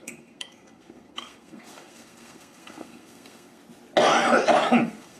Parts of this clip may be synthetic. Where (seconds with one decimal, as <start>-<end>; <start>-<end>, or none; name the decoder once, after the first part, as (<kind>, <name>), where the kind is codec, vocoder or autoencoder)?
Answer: 0.0-3.6 (codec, SNAC); 4.8-5.2